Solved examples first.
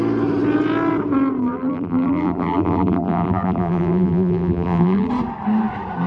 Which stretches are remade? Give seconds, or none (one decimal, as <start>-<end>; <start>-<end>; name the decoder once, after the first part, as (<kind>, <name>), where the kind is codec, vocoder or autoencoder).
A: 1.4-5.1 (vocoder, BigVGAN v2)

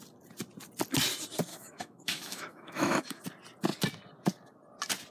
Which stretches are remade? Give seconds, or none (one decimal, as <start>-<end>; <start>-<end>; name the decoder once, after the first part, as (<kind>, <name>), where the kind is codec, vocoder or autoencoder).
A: 1.5-3.2 (autoencoder, DAC-VAE)

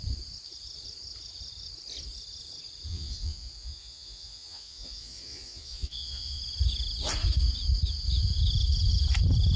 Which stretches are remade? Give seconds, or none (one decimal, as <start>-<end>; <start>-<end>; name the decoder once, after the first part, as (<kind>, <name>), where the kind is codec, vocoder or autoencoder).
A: 2.9-6.4 (vocoder, Vocos)

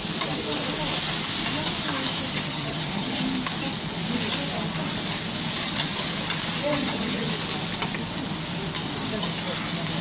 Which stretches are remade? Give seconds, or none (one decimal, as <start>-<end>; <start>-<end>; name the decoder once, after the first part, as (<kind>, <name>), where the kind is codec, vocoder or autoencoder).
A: 2.3-3.2 (vocoder, HiFi-GAN); 5.6-6.1; 6.7-7.3

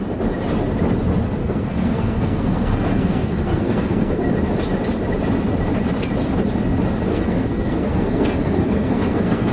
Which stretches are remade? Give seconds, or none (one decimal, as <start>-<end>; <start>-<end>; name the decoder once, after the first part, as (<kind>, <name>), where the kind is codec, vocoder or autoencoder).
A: 1.4-4.3 (codec, SNAC); 7.1-9.5

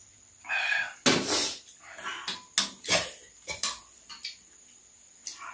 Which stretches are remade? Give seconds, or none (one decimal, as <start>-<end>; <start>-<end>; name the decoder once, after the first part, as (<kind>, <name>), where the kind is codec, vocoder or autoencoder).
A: none

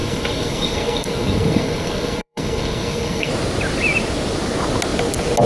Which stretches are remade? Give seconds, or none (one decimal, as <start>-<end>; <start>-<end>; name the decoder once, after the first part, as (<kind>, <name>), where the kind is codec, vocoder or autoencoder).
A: 0.0-3.3 (codec, SNAC)

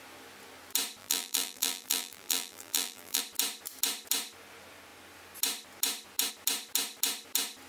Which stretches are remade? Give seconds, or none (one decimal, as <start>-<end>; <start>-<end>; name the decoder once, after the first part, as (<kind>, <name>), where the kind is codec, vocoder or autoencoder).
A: 1.0-3.2 (vocoder, BigVGAN v2)